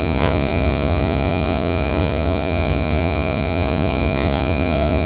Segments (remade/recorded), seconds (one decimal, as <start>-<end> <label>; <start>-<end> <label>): 0.0-5.1 remade

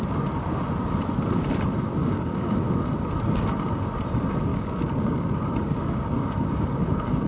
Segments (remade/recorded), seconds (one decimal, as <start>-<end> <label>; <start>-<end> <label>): 0.0-2.0 recorded; 2.0-2.6 remade; 2.6-4.5 recorded; 4.5-7.3 remade

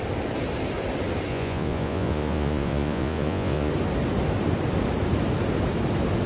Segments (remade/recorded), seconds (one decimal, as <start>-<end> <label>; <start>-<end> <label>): 0.0-1.3 recorded; 1.3-3.7 remade; 3.7-6.3 recorded

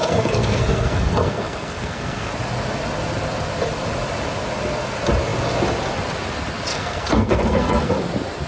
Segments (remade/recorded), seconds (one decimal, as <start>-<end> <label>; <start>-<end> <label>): 0.0-2.3 remade; 2.3-6.7 recorded; 6.7-7.9 remade; 7.9-8.5 recorded

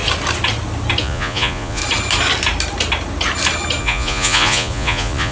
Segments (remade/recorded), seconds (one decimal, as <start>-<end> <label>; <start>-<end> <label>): 0.0-1.0 recorded; 1.0-1.8 remade; 1.8-3.8 recorded; 3.8-5.3 remade

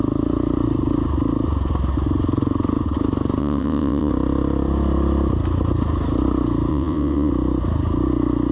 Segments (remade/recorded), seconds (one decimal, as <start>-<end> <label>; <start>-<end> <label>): 0.0-3.4 recorded; 3.4-4.1 remade; 4.1-6.7 recorded; 6.7-7.3 remade; 7.3-8.5 recorded